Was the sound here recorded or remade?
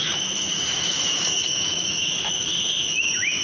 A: remade